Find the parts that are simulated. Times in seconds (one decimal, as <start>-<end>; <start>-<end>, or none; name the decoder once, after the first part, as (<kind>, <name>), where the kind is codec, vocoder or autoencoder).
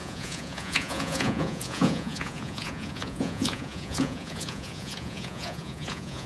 0.0-6.3 (vocoder, Vocos)